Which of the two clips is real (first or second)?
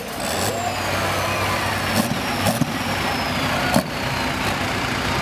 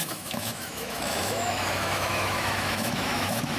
first